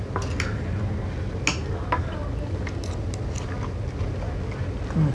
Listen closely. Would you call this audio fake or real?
real